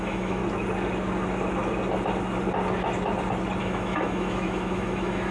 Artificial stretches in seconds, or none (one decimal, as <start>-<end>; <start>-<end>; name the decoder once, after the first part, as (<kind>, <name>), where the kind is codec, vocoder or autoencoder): 0.0-0.4 (autoencoder, DAC-VAE); 3.6-5.3